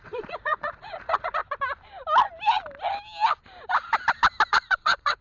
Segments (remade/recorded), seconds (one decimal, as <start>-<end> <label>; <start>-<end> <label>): 0.0-1.4 remade; 1.4-4.5 recorded; 4.5-5.2 remade